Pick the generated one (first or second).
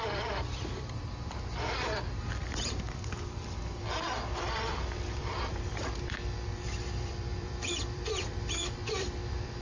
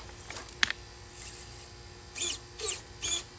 first